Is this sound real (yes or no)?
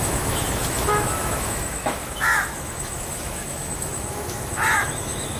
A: no